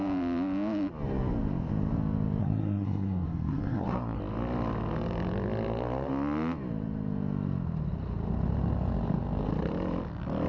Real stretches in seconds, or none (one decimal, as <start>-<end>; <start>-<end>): 0.0-2.4; 4.2-10.5